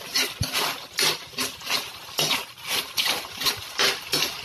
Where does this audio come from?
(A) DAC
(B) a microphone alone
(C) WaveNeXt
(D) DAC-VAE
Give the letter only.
B